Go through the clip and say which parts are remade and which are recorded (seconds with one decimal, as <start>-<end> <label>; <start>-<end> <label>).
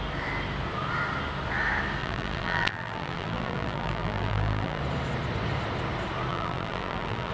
0.0-2.0 recorded; 2.0-4.8 remade; 4.8-6.3 recorded; 6.3-7.3 remade